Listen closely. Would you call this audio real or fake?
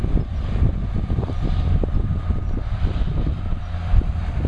fake